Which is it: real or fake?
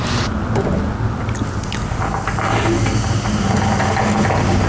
real